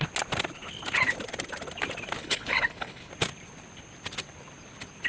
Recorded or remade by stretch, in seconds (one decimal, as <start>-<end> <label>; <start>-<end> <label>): 0.0-2.2 recorded; 2.2-3.1 remade; 3.1-5.1 recorded